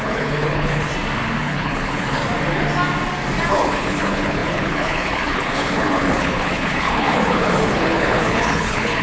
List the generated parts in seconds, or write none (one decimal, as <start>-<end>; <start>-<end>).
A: 0.0-0.9; 1.4-2.2; 3.5-9.0